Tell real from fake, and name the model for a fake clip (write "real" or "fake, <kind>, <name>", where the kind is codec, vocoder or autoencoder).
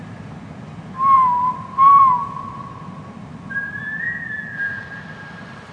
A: fake, vocoder, BigVGAN v2